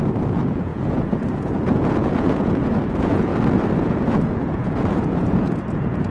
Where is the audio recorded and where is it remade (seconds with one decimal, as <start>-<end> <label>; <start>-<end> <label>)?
0.0-3.3 remade; 3.3-3.8 recorded; 3.8-6.1 remade

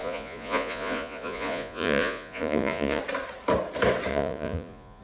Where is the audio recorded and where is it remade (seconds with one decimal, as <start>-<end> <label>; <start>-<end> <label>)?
0.0-3.0 remade; 3.0-4.1 recorded; 4.1-5.0 remade